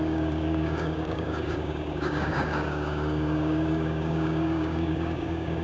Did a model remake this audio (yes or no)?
yes